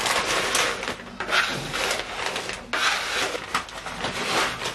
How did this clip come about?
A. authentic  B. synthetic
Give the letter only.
A